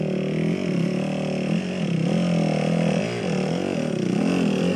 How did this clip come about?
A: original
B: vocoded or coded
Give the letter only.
A